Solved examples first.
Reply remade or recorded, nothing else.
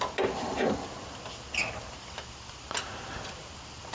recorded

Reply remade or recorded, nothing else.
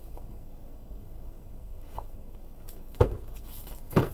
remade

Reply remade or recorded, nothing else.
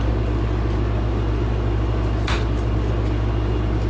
recorded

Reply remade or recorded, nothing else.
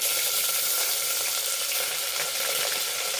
recorded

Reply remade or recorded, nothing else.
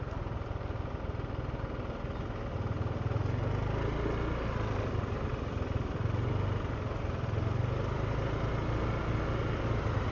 recorded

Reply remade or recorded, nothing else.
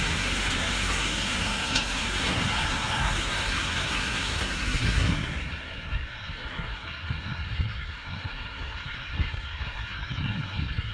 remade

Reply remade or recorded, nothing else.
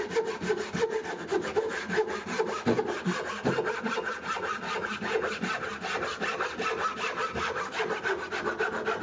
recorded